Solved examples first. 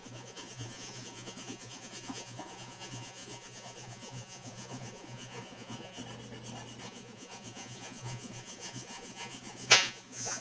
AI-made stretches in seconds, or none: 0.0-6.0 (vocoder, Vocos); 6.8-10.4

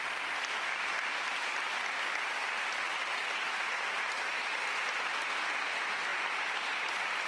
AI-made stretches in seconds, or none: none